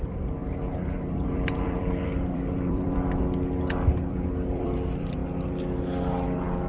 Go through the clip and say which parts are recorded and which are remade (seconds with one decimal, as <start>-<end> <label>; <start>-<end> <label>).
0.0-0.4 remade; 0.4-1.1 recorded; 1.1-3.2 remade; 3.2-4.1 recorded; 4.1-5.2 remade; 5.2-6.7 recorded